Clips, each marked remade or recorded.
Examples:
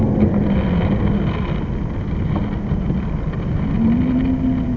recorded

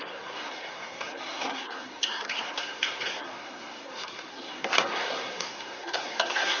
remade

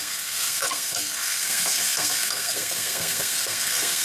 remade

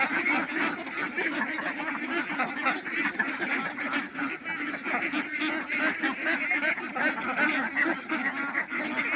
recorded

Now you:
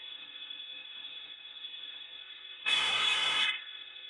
remade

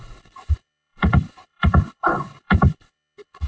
remade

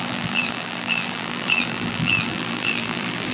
remade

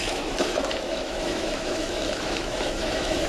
remade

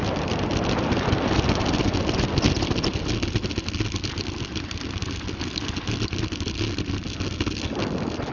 recorded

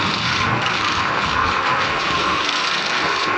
remade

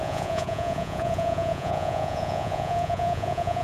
remade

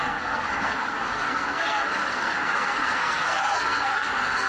remade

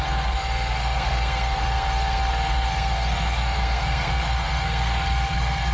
remade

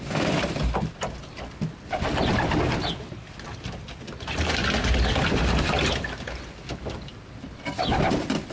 recorded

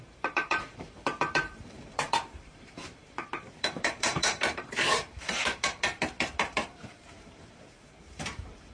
remade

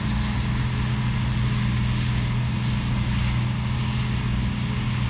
recorded